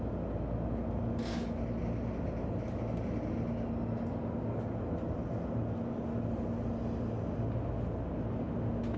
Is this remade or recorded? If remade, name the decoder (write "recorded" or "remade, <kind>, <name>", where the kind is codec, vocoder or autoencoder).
recorded